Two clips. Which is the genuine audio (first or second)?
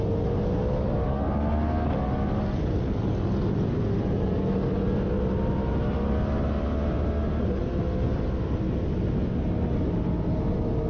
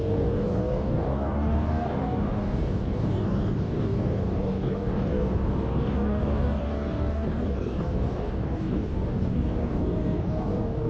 first